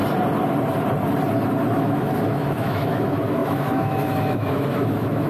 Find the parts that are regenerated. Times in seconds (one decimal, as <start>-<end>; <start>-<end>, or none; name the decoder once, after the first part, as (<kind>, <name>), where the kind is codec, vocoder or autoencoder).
1.7-5.3 (autoencoder, DAC-VAE)